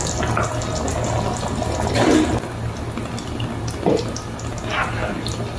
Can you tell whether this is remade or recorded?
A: recorded